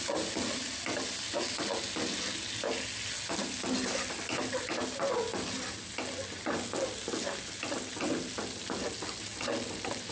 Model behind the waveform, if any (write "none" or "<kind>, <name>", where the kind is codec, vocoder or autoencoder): none